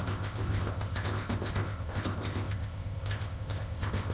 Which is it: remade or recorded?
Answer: remade